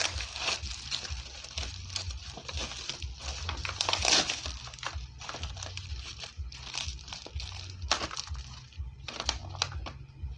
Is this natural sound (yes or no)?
yes